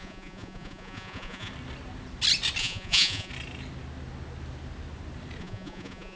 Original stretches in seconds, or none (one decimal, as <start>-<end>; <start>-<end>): 1.5-2.6; 3.3-5.4